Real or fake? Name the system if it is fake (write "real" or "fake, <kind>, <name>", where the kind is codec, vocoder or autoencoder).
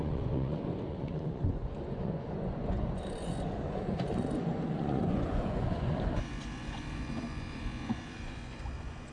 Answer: fake, vocoder, Vocos